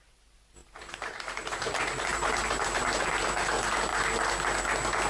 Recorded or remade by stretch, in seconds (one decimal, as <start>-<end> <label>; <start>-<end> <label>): 0.0-0.6 recorded; 0.6-1.6 remade; 1.6-2.1 recorded; 2.1-2.8 remade; 2.8-5.1 recorded